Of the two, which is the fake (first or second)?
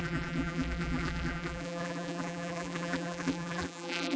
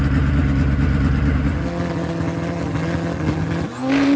first